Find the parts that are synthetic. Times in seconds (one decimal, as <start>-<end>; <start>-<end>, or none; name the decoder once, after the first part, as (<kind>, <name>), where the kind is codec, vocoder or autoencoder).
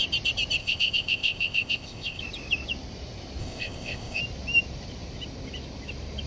0.6-2.2 (codec, ZipCodec); 3.4-4.2